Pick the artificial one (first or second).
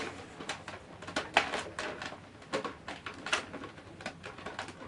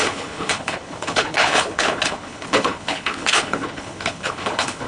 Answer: second